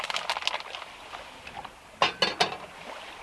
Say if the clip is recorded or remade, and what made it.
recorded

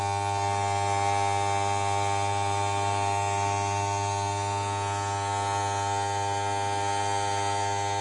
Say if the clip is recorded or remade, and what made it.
recorded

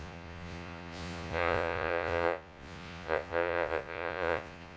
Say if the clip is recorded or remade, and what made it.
remade, vocoder, Vocos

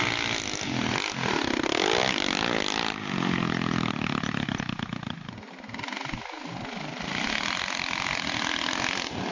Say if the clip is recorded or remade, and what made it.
recorded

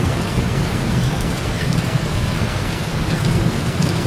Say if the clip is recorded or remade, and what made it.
remade, codec, SNAC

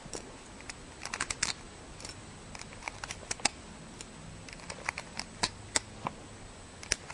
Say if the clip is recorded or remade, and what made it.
recorded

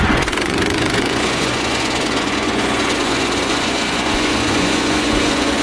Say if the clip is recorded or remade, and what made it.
remade, vocoder, Vocos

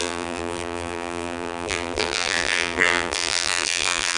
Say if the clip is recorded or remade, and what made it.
remade, vocoder, BigVGAN v2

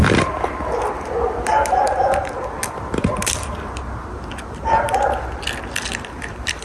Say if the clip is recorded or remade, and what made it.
recorded